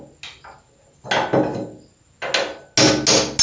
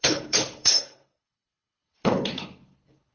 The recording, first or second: first